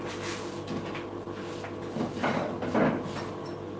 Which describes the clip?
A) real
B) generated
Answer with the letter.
A